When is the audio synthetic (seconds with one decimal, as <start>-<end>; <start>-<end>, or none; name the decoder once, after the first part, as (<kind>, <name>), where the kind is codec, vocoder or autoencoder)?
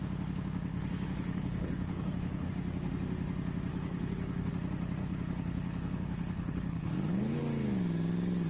0.7-2.5 (codec, HILCodec); 3.7-4.5; 5.0-7.4